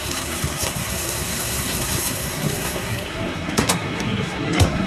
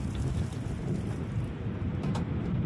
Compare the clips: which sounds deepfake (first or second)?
first